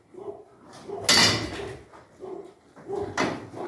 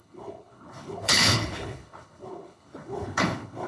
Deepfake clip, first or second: second